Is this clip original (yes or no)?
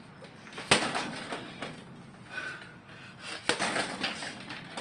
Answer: yes